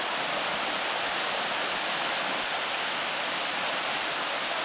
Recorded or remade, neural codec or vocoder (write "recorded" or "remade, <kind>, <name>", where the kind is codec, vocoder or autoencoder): recorded